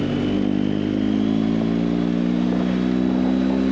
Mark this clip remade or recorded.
recorded